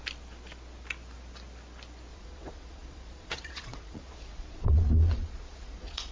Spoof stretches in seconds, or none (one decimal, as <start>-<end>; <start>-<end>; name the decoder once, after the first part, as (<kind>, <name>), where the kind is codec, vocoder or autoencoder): 2.1-6.1 (vocoder, Vocos)

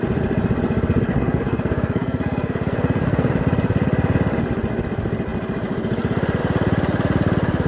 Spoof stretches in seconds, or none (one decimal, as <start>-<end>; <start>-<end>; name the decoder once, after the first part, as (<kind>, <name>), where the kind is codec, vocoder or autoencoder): 1.1-3.3 (codec, SNAC)

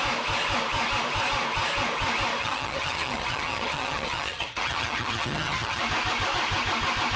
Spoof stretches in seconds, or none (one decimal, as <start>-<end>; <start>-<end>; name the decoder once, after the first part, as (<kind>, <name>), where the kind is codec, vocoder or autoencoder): 2.4-5.8 (vocoder, HiFi-GAN)

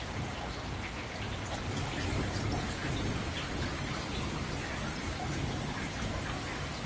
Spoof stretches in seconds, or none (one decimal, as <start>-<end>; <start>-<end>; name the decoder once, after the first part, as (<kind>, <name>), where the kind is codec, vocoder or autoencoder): none

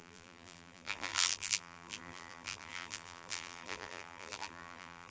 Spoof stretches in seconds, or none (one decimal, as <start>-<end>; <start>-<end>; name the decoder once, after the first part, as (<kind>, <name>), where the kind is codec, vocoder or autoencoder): 0.0-5.1 (vocoder, BigVGAN v2)

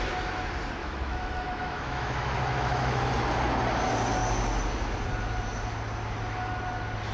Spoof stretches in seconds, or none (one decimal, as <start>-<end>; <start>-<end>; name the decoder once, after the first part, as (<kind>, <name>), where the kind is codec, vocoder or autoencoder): 0.8-3.1 (autoencoder, DAC-VAE)

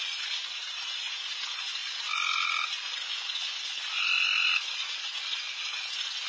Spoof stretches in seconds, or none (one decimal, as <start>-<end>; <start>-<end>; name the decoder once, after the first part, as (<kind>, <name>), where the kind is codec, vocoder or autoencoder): 0.4-1.4 (vocoder, BigVGAN v2)

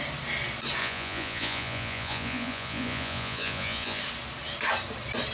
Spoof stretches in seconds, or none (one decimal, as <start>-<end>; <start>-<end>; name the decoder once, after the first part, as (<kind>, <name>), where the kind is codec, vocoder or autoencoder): 0.8-4.0 (vocoder, Vocos)